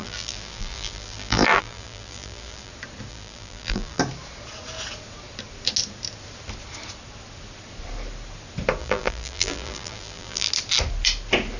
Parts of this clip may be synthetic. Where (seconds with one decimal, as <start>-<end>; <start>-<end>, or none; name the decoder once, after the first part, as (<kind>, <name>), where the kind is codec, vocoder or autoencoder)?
0.0-2.7 (vocoder, BigVGAN v2); 3.1-4.0; 8.8-10.5